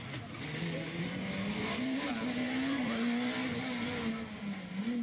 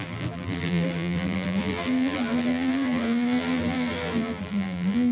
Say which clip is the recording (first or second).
first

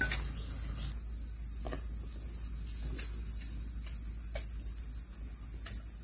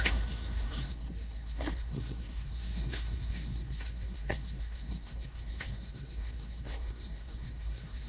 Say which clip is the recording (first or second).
first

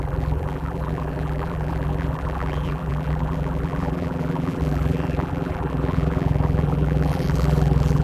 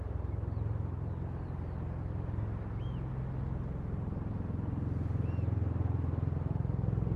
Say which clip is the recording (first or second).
second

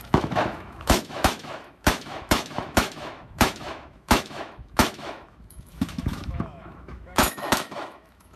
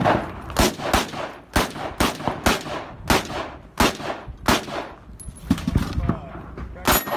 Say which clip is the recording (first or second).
second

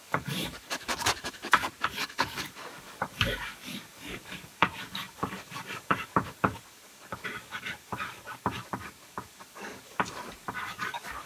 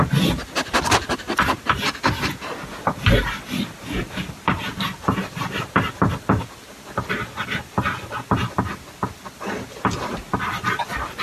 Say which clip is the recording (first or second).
second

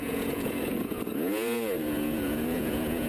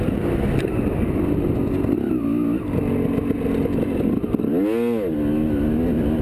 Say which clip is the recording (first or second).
second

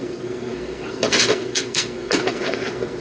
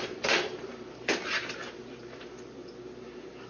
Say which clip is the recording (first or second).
second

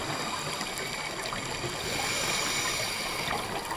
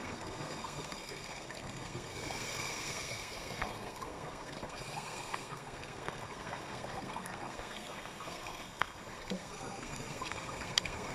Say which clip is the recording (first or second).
first